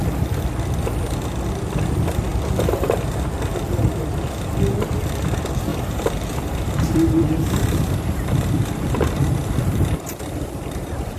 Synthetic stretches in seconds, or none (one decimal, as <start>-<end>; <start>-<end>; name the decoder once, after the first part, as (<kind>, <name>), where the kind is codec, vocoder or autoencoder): 5.7-11.2 (vocoder, BigVGAN v2)